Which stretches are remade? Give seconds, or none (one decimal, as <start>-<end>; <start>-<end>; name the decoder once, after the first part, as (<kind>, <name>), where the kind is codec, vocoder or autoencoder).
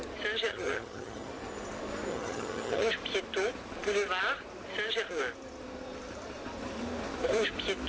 0.5-1.3 (vocoder, HiFi-GAN); 2.1-2.9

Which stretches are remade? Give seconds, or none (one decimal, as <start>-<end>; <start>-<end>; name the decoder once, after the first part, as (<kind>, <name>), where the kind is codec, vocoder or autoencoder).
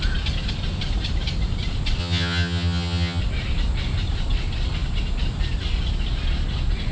2.0-3.2 (vocoder, HiFi-GAN)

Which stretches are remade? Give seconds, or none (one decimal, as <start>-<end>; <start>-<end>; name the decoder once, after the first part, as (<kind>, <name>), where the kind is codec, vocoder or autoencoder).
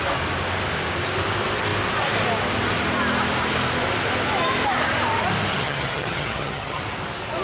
5.5-6.8 (vocoder, HiFi-GAN)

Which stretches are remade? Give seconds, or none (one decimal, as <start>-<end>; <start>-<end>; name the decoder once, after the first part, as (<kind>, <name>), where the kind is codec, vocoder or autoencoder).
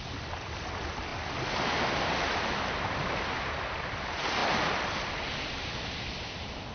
none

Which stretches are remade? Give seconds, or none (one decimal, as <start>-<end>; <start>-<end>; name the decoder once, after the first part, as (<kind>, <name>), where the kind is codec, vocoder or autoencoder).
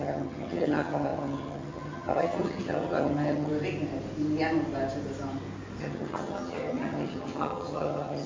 0.0-3.5 (vocoder, HiFi-GAN); 5.8-8.3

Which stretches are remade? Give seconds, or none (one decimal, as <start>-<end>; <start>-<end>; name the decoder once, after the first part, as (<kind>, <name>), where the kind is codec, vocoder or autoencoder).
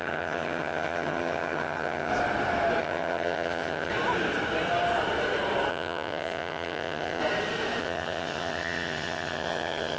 0.0-2.1 (vocoder, HiFi-GAN); 2.8-3.9; 5.7-7.2; 7.8-10.0